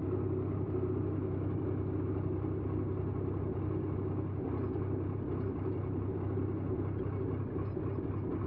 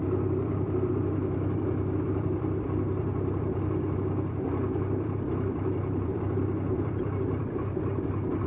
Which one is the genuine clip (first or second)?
first